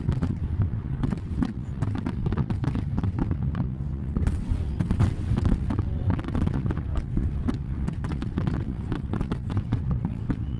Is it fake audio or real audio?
fake